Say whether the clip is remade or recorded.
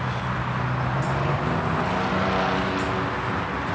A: recorded